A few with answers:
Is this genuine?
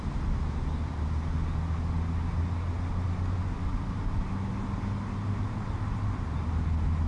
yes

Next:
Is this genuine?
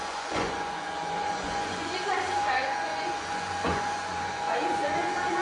no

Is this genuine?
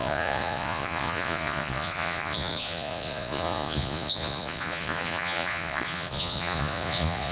no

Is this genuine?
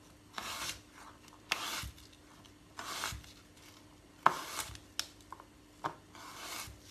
yes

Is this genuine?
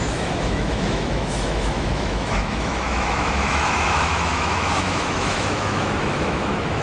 no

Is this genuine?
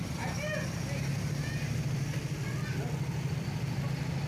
yes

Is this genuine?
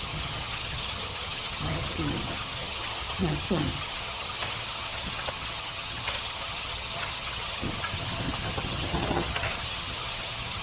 no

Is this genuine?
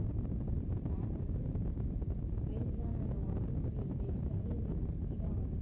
yes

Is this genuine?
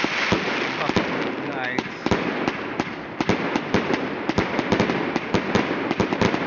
yes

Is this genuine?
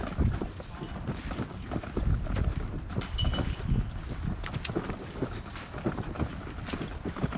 yes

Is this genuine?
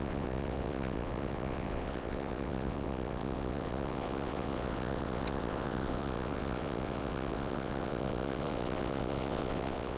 no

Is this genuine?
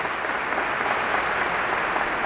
yes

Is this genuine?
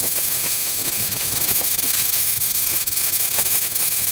no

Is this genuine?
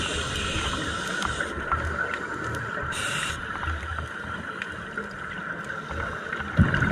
yes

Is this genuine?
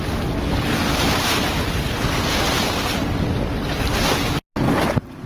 yes